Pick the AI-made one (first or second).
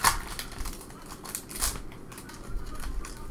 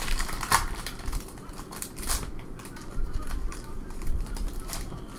second